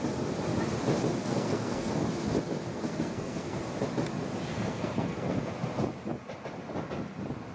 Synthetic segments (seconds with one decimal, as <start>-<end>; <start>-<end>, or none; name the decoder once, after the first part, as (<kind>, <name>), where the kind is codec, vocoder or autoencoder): 1.2-1.9 (codec, SNAC); 2.7-3.6; 4.5-5.5